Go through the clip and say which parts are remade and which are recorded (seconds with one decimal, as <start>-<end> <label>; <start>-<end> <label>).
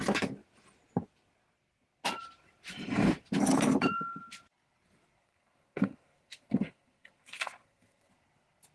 0.0-5.2 recorded; 5.2-8.1 remade; 8.1-8.7 recorded